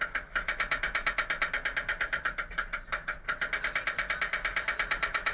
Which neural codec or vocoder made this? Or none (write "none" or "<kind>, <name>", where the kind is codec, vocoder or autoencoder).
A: none